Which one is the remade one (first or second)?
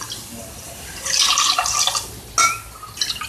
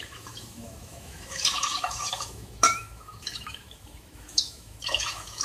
second